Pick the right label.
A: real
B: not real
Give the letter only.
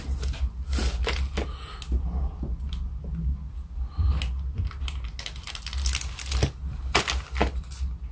A